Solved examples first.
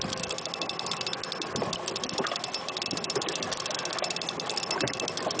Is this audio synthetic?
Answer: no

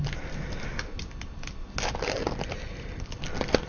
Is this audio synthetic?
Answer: no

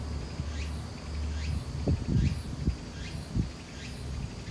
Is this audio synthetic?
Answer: no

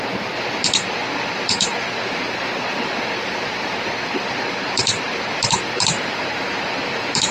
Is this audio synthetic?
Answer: yes